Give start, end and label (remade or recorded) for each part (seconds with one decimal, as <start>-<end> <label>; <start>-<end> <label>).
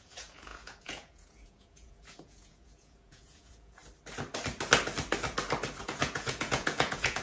0.0-3.8 remade; 3.8-5.8 recorded; 5.8-7.2 remade